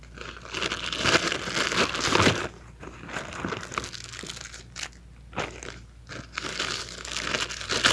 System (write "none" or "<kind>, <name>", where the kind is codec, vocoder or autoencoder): none